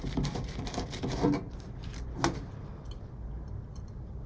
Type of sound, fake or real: real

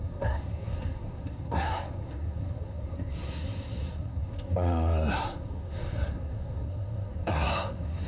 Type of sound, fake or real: fake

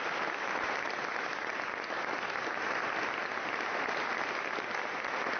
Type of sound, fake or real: real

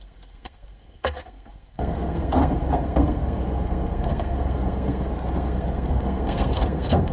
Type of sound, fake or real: fake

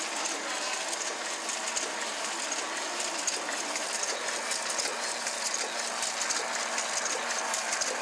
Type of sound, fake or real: real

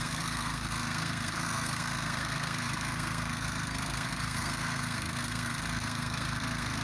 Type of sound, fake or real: fake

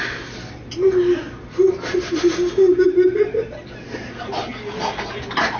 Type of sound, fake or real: real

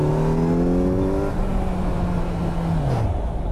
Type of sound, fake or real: real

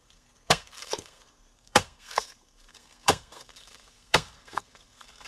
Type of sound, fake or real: fake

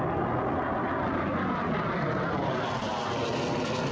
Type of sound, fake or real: real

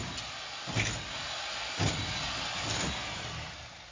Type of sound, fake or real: real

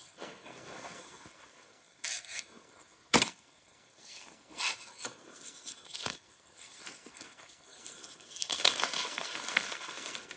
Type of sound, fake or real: fake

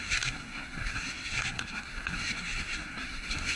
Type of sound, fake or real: fake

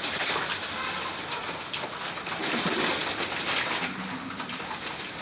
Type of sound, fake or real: real